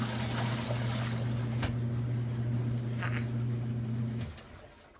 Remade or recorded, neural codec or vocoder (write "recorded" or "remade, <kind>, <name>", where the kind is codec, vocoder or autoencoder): recorded